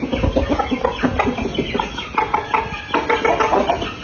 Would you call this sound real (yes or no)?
yes